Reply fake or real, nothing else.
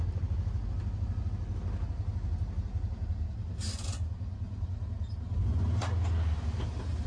real